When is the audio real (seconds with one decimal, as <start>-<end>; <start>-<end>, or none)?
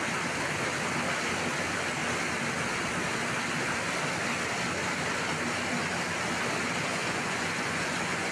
0.0-6.9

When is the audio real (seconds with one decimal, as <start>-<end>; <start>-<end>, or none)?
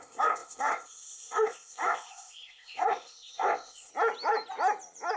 3.9-5.2